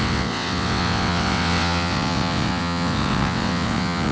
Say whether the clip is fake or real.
fake